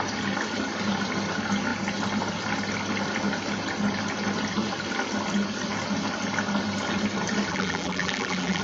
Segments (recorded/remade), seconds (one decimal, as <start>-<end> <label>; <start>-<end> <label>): 0.0-7.5 recorded; 7.5-8.6 remade